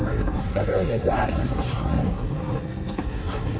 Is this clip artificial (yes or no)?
yes